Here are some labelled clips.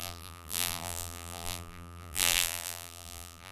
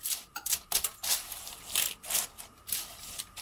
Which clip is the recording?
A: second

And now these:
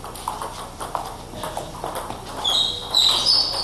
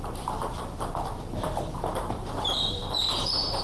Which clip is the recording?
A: first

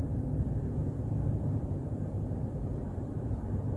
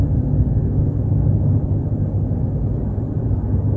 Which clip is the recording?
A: second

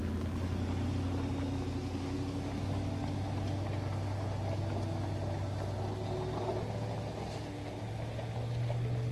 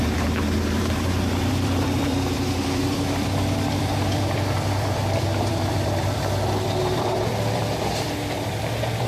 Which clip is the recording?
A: first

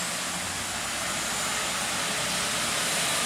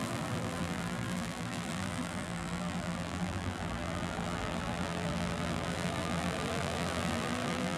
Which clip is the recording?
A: first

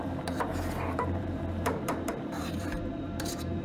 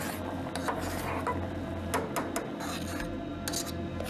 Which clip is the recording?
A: second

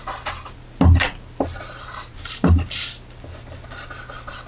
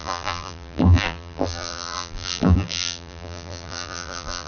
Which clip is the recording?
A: first